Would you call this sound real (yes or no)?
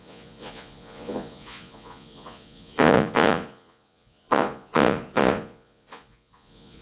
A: no